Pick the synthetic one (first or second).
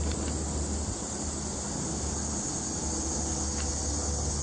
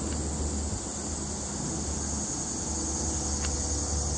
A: first